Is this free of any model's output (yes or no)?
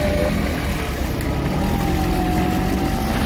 yes